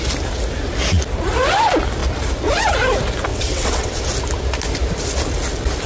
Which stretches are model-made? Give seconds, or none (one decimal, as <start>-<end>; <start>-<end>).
3.3-4.0